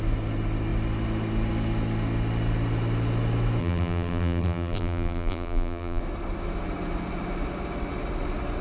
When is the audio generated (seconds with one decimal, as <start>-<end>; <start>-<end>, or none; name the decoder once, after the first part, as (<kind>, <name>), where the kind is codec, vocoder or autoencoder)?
3.6-6.0 (vocoder, BigVGAN v2)